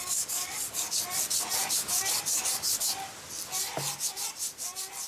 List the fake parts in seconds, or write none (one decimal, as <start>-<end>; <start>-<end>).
0.0-1.0; 1.6-3.1